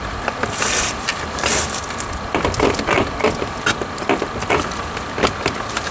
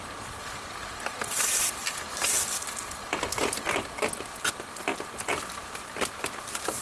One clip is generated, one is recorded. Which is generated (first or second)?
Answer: first